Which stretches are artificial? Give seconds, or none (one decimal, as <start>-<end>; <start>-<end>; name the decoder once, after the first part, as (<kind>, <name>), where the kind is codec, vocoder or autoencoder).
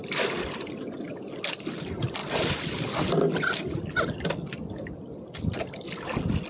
none